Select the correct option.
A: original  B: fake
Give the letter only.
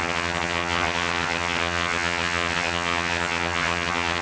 B